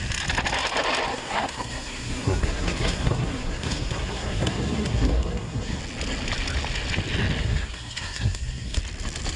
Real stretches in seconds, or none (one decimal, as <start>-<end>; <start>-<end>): 0.0-1.1; 5.8-7.4; 8.8-9.4